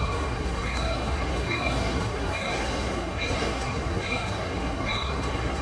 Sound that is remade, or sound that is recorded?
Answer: remade